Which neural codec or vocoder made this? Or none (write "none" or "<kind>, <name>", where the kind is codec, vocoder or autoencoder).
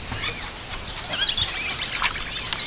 none